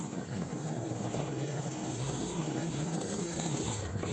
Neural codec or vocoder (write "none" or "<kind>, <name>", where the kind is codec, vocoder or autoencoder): codec, SNAC